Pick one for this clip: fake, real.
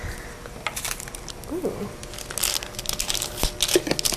real